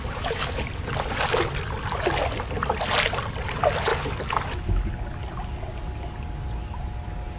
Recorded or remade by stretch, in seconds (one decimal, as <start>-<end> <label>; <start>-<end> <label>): 0.0-0.6 remade; 0.6-7.4 recorded